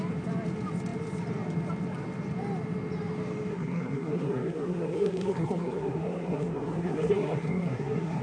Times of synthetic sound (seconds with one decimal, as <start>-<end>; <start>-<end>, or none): 3.5-8.2